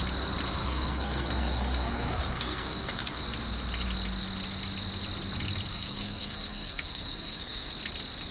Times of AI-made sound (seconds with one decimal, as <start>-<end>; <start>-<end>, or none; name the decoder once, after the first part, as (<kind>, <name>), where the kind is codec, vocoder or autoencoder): 0.6-3.2 (codec, SNAC); 5.7-7.7